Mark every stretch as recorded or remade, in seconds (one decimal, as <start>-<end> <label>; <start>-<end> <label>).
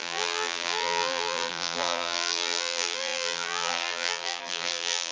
0.0-5.1 remade